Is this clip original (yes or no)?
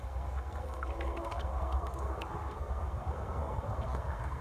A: no